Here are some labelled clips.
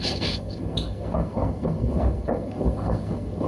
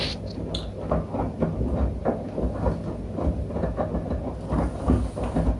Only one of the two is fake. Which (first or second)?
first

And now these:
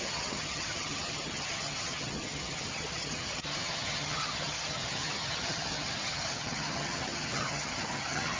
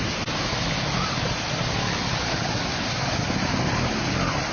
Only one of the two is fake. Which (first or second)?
first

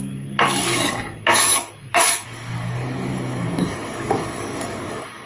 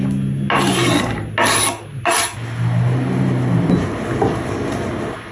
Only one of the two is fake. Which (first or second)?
first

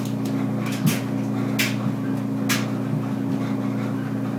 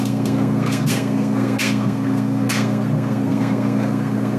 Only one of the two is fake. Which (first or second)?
second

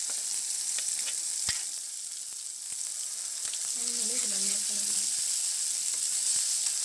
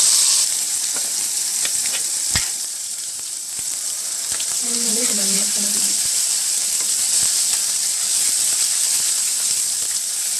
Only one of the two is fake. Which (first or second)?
second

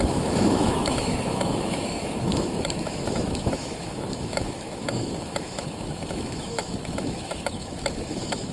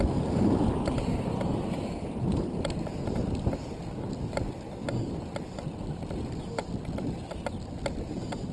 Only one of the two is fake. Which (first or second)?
first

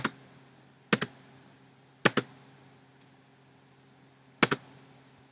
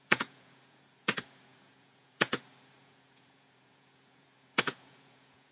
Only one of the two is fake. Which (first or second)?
second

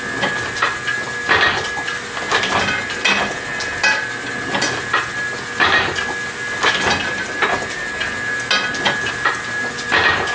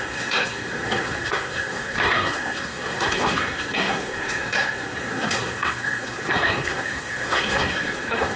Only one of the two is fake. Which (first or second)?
second